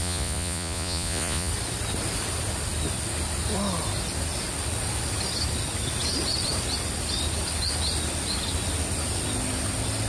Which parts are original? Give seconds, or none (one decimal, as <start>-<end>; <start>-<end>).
1.5-10.1